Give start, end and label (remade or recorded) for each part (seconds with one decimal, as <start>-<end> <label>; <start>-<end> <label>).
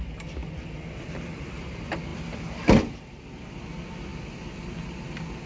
0.0-2.1 recorded; 2.1-3.0 remade; 3.0-4.1 recorded; 4.1-4.7 remade; 4.7-5.5 recorded